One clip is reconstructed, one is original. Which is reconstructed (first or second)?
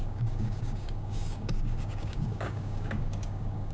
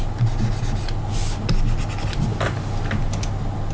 first